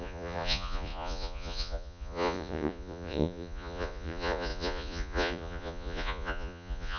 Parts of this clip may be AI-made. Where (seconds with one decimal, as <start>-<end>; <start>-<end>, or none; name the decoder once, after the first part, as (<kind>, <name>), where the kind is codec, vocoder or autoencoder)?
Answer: 0.0-7.0 (vocoder, Vocos)